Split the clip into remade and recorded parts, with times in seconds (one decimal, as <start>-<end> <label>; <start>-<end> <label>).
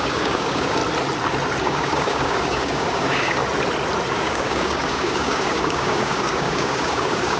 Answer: 0.0-0.8 remade; 0.8-1.6 recorded; 1.6-3.4 remade; 3.4-4.1 recorded; 4.1-7.4 remade